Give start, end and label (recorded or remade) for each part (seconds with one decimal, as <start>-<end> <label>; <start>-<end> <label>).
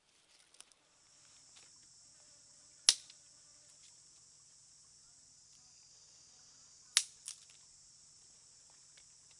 0.0-9.4 recorded